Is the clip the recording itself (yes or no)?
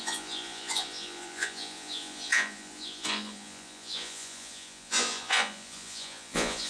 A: no